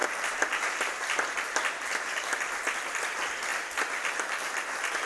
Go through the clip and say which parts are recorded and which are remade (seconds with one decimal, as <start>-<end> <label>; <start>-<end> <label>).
0.0-2.4 remade; 2.4-5.1 recorded